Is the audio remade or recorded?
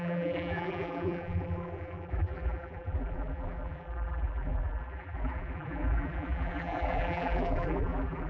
remade